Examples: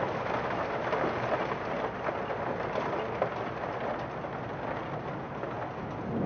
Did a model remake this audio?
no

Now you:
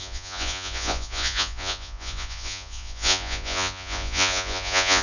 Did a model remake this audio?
yes